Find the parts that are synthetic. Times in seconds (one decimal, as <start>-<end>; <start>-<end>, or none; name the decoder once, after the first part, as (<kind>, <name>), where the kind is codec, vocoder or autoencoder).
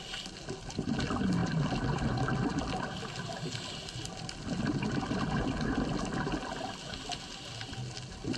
none